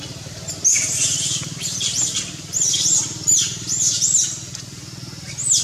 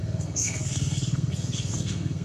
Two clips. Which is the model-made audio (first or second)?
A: second